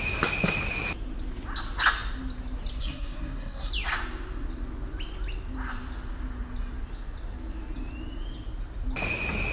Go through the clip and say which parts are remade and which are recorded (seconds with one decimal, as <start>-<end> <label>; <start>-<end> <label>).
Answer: 0.0-2.8 recorded; 2.8-3.7 remade; 3.7-9.5 recorded